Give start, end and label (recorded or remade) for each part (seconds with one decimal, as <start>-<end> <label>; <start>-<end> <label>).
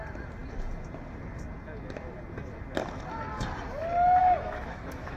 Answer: 0.0-4.2 recorded; 4.2-5.2 remade